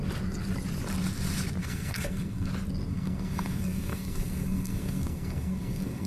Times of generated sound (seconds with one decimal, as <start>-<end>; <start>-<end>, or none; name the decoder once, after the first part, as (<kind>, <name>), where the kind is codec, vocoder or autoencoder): 1.6-2.5 (codec, SNAC); 2.9-6.1